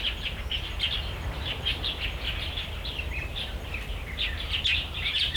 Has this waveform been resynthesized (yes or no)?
no